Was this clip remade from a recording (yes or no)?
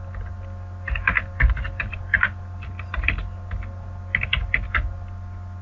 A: no